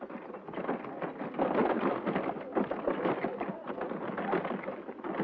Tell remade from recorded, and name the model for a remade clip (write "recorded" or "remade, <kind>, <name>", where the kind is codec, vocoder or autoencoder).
recorded